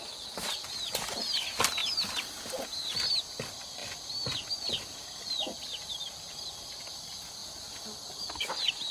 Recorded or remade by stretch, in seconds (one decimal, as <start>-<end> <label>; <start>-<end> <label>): 0.0-3.8 remade; 3.8-4.7 recorded; 4.7-5.9 remade; 5.9-6.7 recorded; 6.7-8.9 remade